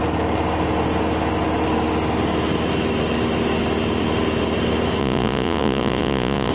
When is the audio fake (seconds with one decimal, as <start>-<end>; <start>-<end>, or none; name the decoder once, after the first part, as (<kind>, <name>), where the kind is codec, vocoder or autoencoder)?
5.0-6.5 (vocoder, Vocos)